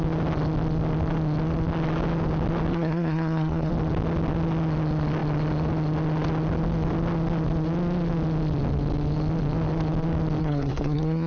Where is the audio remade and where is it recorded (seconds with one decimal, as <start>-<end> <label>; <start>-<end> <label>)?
0.0-2.7 recorded; 2.7-3.7 remade; 3.7-10.4 recorded; 10.4-11.3 remade